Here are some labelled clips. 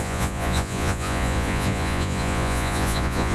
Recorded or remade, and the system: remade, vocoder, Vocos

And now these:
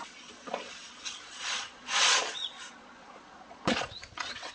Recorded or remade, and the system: remade, vocoder, Vocos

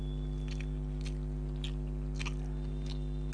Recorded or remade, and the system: recorded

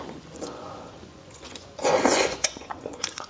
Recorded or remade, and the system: remade, vocoder, Vocos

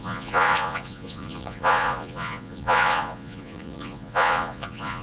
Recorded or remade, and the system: remade, vocoder, Vocos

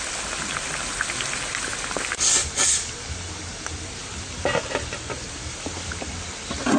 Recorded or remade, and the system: recorded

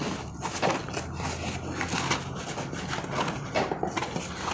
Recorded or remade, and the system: recorded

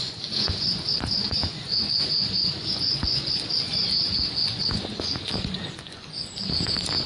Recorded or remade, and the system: remade, vocoder, Vocos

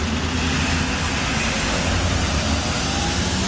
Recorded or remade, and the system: recorded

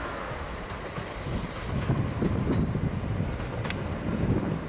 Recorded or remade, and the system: recorded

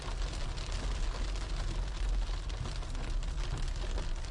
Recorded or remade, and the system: recorded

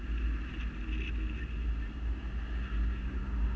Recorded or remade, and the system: recorded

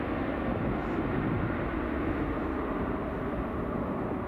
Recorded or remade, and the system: recorded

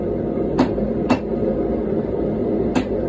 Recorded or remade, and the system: recorded